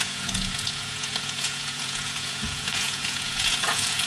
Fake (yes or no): yes